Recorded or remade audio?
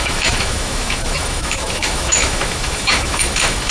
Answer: remade